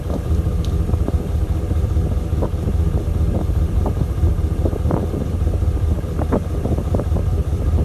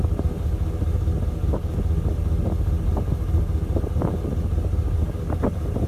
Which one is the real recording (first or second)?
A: second